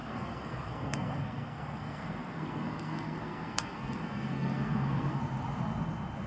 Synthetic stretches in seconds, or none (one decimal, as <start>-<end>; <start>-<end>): 0.0-5.2